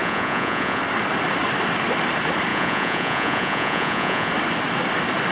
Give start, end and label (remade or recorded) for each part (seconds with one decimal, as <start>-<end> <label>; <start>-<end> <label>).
0.0-0.8 remade; 0.8-2.5 recorded; 2.5-4.3 remade; 4.3-5.3 recorded